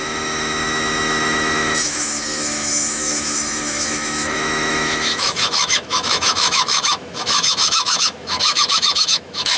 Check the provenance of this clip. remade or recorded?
remade